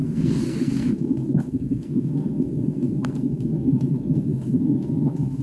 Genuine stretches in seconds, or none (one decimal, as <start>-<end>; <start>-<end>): none